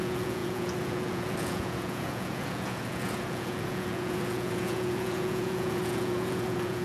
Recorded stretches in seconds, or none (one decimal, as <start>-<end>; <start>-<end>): none